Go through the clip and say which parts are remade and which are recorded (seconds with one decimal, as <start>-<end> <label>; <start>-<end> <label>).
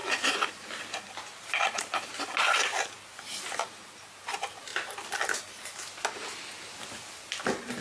0.0-7.8 recorded